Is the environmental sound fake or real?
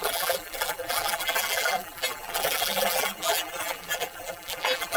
fake